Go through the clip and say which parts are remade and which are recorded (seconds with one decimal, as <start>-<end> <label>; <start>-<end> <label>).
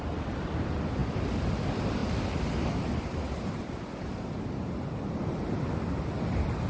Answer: 0.0-6.7 recorded